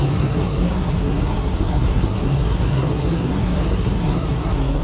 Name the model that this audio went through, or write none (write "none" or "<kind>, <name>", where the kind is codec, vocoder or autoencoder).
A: codec, SNAC